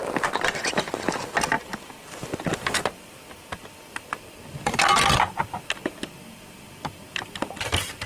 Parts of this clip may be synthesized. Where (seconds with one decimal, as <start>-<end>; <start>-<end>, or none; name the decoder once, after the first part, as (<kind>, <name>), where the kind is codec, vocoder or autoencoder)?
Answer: none